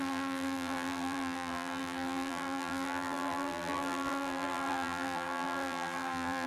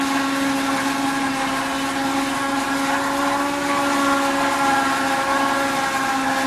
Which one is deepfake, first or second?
first